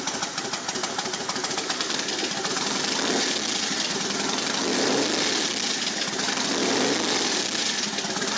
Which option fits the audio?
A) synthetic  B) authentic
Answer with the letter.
B